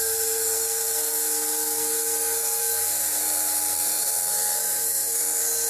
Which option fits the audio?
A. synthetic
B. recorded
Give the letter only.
A